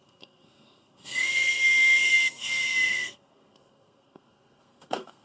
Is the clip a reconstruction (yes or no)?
yes